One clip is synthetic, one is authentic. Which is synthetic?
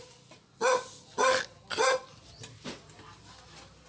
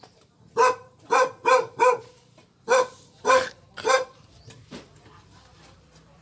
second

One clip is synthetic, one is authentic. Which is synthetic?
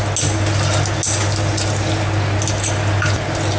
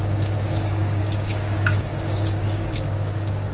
second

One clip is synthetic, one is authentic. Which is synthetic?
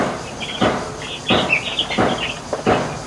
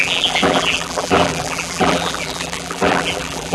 second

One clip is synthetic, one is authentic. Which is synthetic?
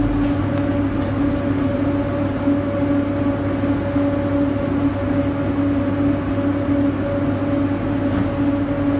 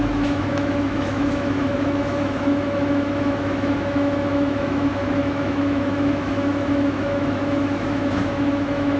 second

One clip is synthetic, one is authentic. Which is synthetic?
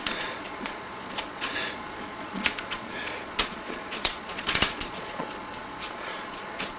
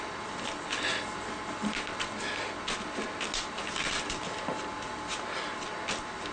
first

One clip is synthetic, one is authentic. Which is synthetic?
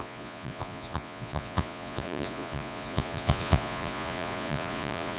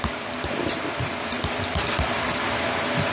first